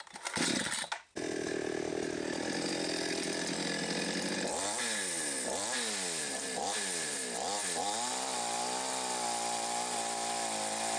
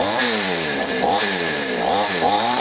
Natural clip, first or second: first